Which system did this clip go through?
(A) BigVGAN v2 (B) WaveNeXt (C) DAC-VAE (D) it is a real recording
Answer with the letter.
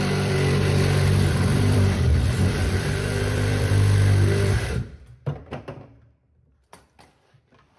A